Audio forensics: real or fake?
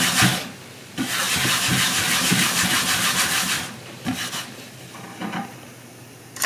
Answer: real